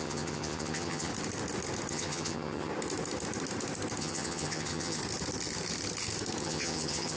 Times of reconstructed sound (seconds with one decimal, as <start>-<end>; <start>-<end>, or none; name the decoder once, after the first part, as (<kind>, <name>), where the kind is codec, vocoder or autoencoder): 0.0-1.1 (vocoder, HiFi-GAN); 1.9-2.7; 4.0-5.0; 6.4-7.2